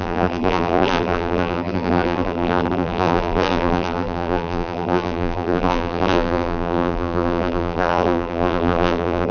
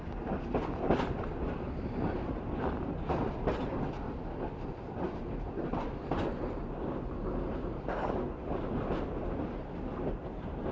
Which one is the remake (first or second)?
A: first